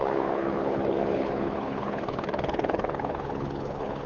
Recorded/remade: remade